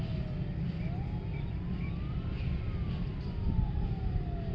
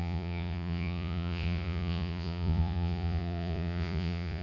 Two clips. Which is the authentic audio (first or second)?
first